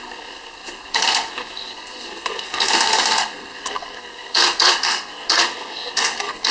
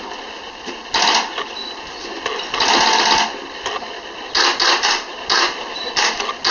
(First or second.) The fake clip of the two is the first